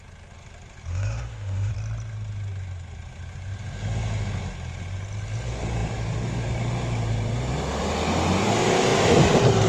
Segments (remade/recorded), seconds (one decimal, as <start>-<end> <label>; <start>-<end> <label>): 0.0-0.9 recorded; 0.9-1.7 remade; 1.7-9.7 recorded